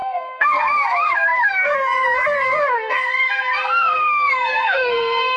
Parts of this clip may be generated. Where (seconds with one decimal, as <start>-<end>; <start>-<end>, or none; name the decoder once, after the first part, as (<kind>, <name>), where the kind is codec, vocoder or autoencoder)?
0.0-5.4 (codec, SNAC)